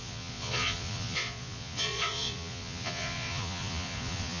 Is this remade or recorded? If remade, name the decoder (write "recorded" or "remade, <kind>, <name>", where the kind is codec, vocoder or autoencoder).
remade, vocoder, Vocos